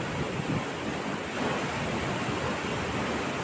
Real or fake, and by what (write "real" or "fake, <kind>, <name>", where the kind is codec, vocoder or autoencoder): real